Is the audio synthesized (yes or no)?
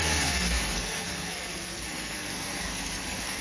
yes